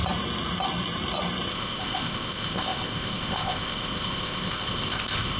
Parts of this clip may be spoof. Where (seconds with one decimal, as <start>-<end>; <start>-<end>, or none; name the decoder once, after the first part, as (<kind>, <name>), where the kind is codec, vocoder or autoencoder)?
1.5-5.4 (codec, ZipCodec)

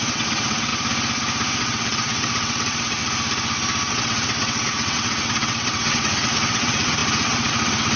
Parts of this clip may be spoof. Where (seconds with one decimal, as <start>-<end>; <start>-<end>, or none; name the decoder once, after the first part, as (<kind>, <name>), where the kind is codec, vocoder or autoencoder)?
0.0-0.7 (vocoder, WaveNeXt); 1.6-3.0; 3.9-8.0